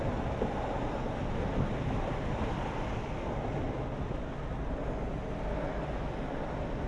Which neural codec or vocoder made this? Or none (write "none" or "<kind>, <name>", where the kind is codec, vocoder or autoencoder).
none